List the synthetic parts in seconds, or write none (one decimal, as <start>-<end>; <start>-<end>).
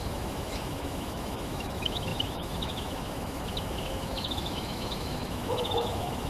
0.0-6.3